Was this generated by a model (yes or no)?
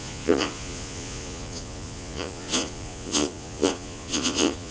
yes